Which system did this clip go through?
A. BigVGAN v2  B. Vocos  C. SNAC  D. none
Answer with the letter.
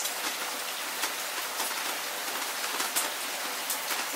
D